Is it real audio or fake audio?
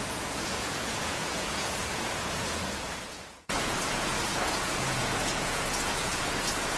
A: fake